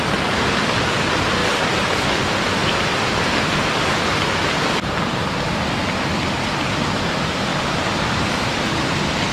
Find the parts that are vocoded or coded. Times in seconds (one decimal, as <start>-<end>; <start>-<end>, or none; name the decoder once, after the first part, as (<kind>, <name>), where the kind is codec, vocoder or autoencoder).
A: 1.4-2.1 (vocoder, BigVGAN v2); 7.5-8.6